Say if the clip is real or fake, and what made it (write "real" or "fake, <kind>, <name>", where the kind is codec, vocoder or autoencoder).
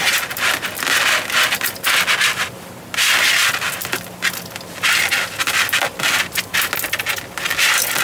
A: real